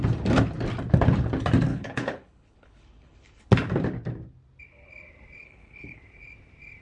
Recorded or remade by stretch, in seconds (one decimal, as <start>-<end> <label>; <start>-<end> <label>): 0.0-1.7 recorded; 1.7-3.5 remade; 3.5-5.4 recorded; 5.4-6.0 remade; 6.0-6.8 recorded